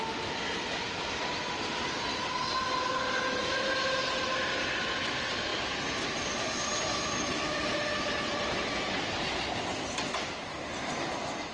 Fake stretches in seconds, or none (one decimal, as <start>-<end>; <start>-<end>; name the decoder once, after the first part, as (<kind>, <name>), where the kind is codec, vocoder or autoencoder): none